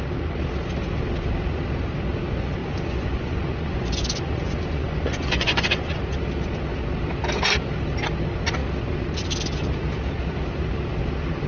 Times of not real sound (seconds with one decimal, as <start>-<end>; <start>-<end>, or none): 2.6-6.0